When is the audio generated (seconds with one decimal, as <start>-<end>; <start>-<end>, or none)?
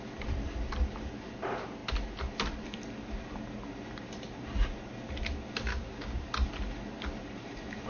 5.7-6.3